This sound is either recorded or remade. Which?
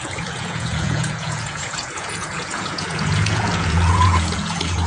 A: remade